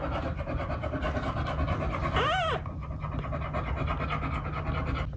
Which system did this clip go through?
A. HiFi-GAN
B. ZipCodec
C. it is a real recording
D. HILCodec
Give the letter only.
C